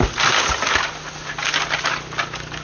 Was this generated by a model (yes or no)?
no